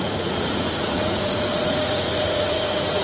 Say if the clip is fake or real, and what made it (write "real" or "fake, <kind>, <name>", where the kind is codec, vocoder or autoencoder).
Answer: fake, vocoder, Vocos